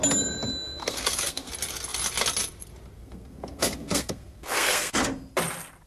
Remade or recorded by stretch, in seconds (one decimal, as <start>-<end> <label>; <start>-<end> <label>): 0.0-0.8 recorded; 0.8-1.5 remade; 1.5-3.0 recorded; 3.0-5.0 remade; 5.0-5.9 recorded